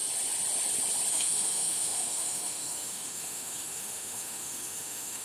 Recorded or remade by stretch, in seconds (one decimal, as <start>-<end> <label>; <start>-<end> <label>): 0.0-1.1 recorded; 1.1-5.2 remade